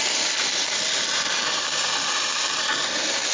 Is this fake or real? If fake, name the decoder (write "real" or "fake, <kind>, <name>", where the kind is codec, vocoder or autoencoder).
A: real